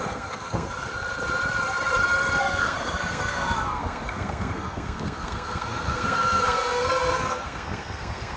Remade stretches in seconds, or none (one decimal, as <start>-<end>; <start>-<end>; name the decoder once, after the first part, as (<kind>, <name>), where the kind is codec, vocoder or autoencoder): 0.0-0.9 (codec, SNAC); 2.4-8.4